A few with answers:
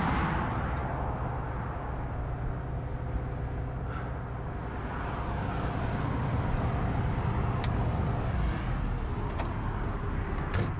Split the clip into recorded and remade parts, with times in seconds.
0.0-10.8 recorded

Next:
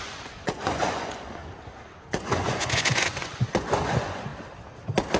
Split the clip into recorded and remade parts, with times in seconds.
0.0-1.4 remade; 1.4-2.0 recorded; 2.0-4.3 remade; 4.3-5.2 recorded

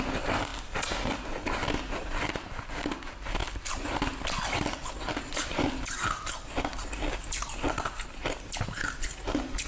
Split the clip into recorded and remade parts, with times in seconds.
0.0-9.7 recorded

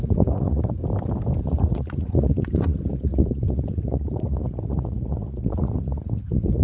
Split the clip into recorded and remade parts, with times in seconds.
0.0-0.8 remade; 0.8-1.4 recorded; 1.4-6.6 remade

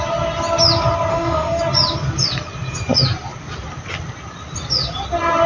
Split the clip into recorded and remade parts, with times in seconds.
0.0-1.1 recorded; 1.1-1.6 remade; 1.6-5.5 recorded

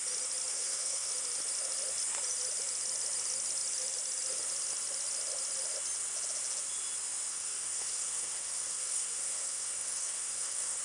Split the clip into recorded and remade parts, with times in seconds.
0.0-0.5 recorded; 0.5-1.1 remade; 1.1-7.3 recorded; 7.3-10.8 remade

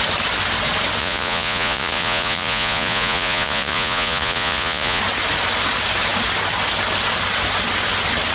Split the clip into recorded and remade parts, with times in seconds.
0.0-1.0 recorded; 1.0-5.0 remade; 5.0-8.3 recorded

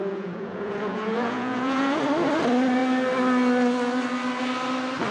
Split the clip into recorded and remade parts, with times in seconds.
0.0-2.0 remade; 2.0-5.1 recorded